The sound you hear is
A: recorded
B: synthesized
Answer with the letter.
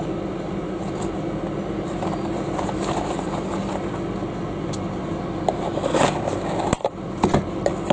A